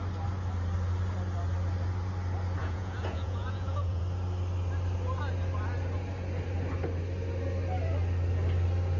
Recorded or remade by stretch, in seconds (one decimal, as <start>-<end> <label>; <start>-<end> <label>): 0.0-2.6 recorded; 2.6-4.0 remade; 4.0-9.0 recorded